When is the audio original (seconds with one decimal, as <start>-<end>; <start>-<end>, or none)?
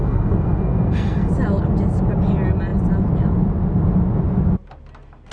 1.3-5.3